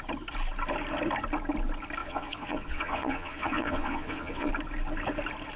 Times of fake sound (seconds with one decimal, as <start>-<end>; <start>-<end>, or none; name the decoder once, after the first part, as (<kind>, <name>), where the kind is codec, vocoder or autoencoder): 2.0-4.5 (vocoder, Vocos)